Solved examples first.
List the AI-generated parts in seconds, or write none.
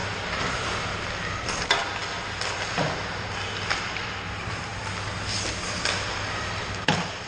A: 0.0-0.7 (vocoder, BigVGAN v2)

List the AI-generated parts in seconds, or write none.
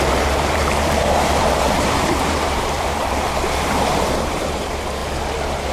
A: 0.0-5.0 (vocoder, BigVGAN v2)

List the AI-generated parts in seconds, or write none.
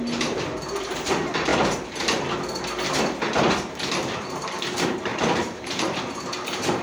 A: 0.0-1.5 (vocoder, BigVGAN v2); 3.7-6.8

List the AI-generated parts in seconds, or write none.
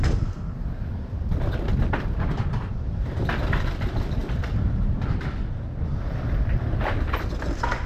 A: 0.0-4.2 (vocoder, BigVGAN v2)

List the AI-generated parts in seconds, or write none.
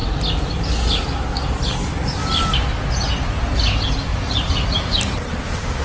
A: 4.1-4.9 (vocoder, BigVGAN v2)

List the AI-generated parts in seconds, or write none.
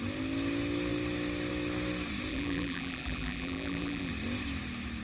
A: 2.3-4.1 (vocoder, BigVGAN v2)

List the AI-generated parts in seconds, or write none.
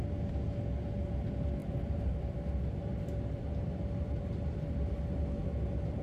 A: 1.6-4.7 (vocoder, BigVGAN v2); 5.4-6.0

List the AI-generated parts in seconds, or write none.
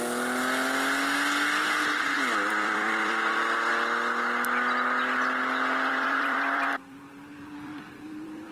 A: 2.5-3.7 (vocoder, BigVGAN v2); 5.9-8.5